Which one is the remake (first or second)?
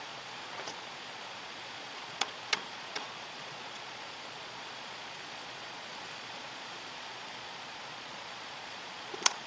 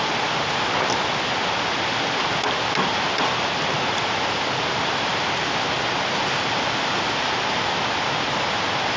first